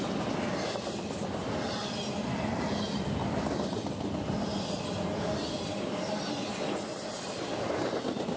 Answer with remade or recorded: recorded